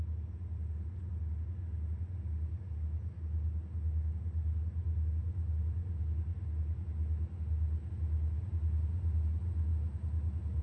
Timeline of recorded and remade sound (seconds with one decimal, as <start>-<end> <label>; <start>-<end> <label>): 0.0-10.6 recorded

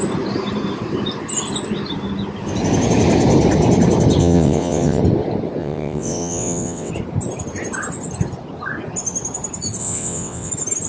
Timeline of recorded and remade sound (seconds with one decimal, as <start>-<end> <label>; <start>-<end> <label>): 0.0-4.2 recorded; 4.2-5.0 remade; 5.0-5.6 recorded; 5.6-6.9 remade; 6.9-9.8 recorded; 9.8-10.5 remade; 10.5-10.9 recorded

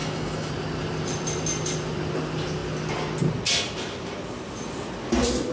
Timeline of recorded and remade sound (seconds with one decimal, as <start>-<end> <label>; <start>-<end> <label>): 0.0-0.5 remade; 0.5-5.5 recorded

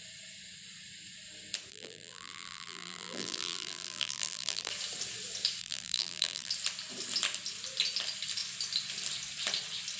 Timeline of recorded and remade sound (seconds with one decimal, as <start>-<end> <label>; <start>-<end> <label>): 0.0-1.7 recorded; 1.7-4.7 remade; 4.7-5.6 recorded; 5.6-6.5 remade; 6.5-10.0 recorded

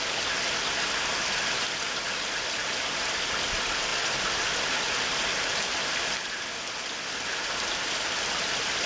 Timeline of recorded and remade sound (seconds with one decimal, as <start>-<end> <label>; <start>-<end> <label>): 0.0-8.9 recorded